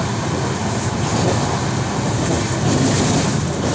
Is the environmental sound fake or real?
real